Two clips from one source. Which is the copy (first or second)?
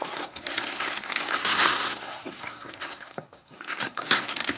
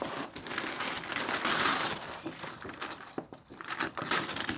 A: first